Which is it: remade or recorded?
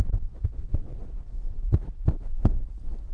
recorded